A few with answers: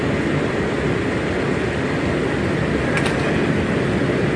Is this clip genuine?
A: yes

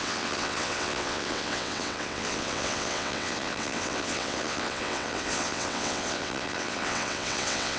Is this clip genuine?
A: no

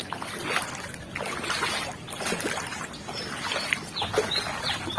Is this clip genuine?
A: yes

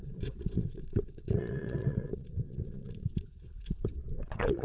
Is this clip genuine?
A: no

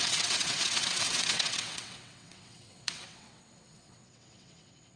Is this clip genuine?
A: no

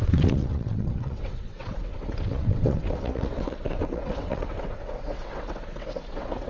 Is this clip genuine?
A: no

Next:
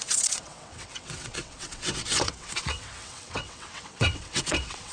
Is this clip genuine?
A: no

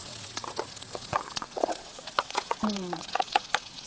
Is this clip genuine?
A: no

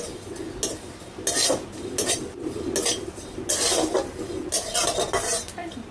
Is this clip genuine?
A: yes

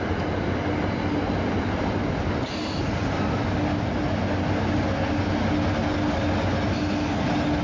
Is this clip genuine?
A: yes